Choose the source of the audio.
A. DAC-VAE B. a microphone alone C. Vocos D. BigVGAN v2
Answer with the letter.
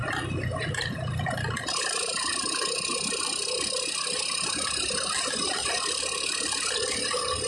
B